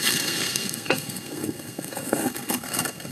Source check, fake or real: fake